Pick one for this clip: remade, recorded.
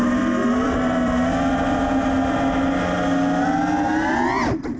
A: recorded